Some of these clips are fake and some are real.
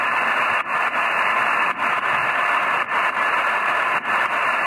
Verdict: fake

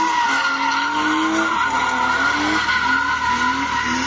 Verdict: real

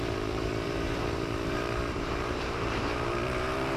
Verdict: fake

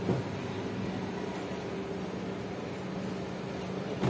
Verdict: real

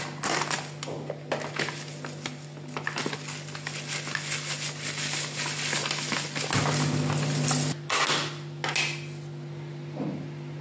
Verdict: real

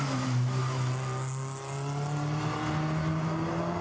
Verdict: real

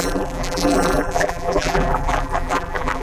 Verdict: fake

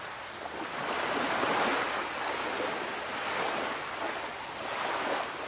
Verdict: real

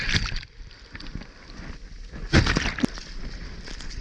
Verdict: real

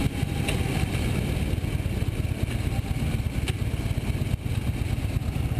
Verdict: real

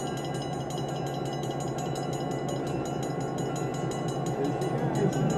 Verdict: real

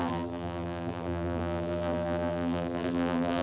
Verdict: fake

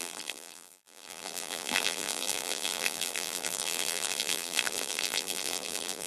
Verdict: fake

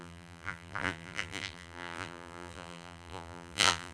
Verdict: fake